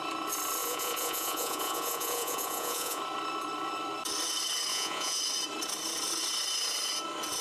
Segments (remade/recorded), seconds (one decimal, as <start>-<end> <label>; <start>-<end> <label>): 0.0-0.6 recorded; 0.6-3.0 remade; 3.0-4.7 recorded; 4.7-5.2 remade; 5.2-7.4 recorded